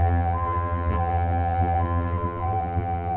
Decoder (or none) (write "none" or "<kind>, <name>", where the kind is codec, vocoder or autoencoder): vocoder, BigVGAN v2